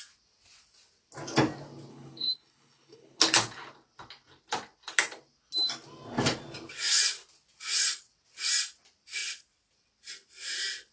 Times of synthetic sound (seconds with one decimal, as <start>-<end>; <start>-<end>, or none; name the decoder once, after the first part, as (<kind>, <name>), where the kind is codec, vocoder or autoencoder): 1.9-3.2 (codec, HILCodec)